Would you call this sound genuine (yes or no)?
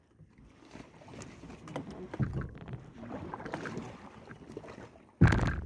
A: yes